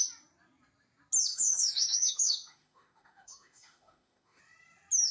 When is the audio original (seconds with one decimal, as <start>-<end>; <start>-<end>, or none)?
0.0-1.3; 4.4-5.1